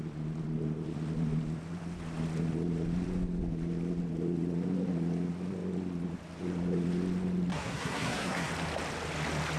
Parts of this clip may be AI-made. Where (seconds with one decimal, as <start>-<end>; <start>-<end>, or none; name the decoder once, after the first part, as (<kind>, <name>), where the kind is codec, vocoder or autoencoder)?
7.5-8.5 (codec, SNAC)